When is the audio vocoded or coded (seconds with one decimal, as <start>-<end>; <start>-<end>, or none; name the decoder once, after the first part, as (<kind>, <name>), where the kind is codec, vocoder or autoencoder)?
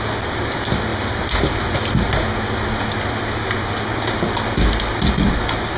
none